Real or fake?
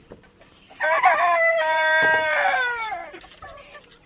fake